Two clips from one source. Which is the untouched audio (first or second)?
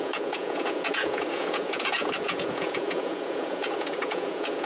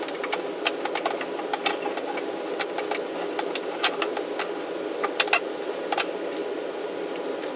second